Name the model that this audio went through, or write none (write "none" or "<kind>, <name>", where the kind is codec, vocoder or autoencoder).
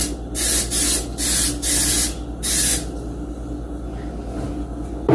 none